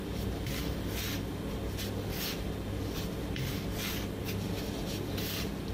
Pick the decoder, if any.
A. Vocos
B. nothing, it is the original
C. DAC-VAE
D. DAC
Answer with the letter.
B